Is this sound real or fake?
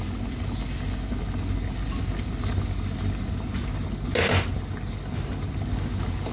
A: real